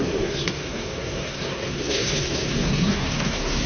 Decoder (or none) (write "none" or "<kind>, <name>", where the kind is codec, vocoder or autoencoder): codec, SNAC